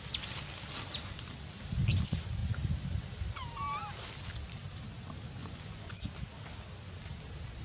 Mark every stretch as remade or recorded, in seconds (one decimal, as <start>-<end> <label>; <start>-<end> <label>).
0.0-5.4 recorded; 5.4-6.0 remade; 6.0-7.6 recorded